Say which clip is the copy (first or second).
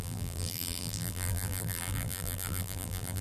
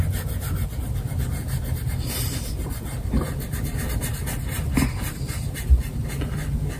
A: first